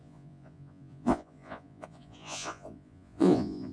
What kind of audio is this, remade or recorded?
remade